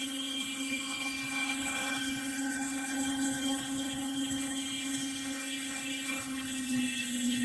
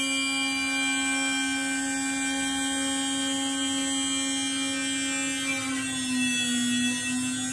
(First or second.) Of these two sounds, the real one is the second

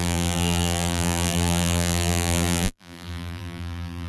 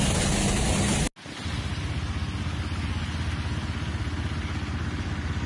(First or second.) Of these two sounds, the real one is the second